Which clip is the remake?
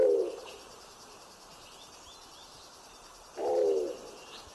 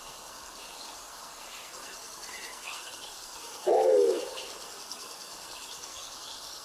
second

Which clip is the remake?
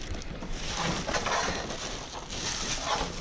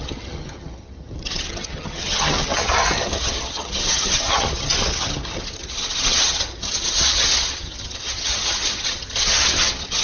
second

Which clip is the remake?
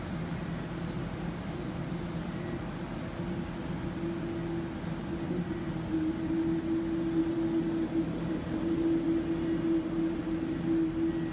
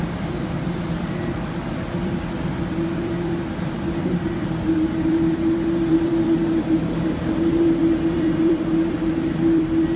second